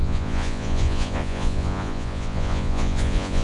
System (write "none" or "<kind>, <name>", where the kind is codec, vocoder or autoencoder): vocoder, Vocos